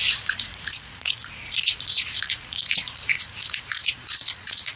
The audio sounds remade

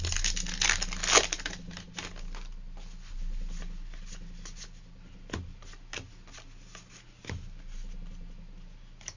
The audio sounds recorded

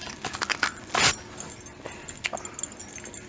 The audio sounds recorded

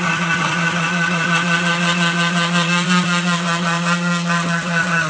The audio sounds remade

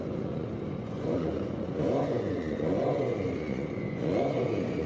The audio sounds remade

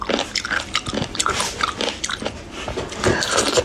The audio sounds recorded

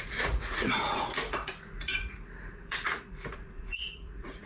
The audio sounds remade